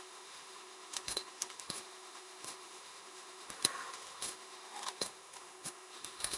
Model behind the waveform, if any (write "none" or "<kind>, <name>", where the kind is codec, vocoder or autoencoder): autoencoder, DAC-VAE